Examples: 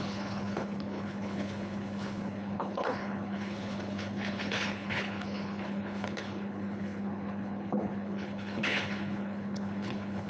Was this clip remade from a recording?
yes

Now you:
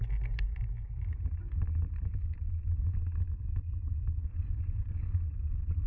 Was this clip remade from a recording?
no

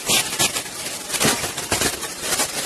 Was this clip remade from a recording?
no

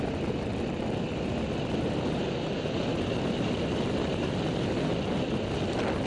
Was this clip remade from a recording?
no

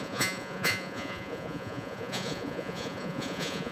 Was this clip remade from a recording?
yes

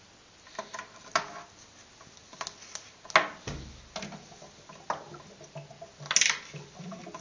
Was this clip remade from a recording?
no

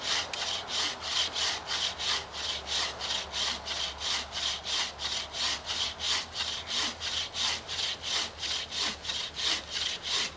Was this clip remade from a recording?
no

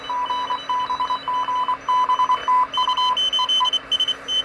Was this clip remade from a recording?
no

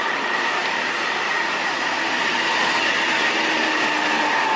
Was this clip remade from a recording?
yes